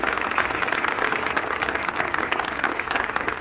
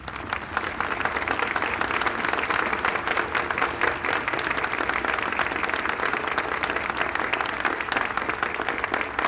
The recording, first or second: second